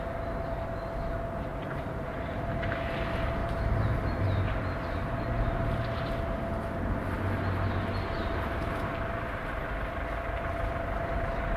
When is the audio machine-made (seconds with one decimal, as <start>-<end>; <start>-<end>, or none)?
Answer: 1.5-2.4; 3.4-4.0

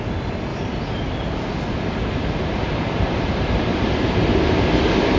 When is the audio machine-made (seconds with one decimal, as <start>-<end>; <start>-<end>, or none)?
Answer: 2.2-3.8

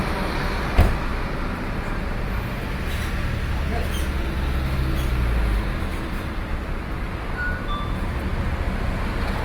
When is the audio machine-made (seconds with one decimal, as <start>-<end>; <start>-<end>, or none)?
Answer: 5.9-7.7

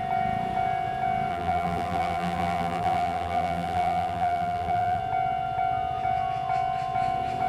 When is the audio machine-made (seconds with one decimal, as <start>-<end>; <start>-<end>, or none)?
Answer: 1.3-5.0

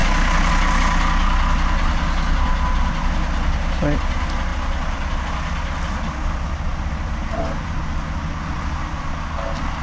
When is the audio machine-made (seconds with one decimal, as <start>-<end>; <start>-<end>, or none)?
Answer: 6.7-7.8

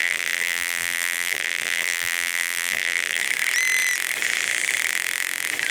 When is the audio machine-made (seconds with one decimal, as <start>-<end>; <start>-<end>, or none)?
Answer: 0.0-3.2